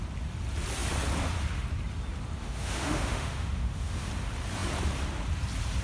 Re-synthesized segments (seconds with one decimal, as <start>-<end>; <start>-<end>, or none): 2.4-4.1